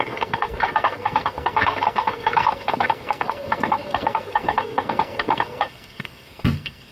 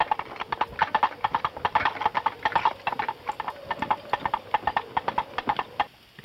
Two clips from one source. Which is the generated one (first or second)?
first